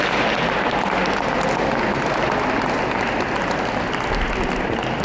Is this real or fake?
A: real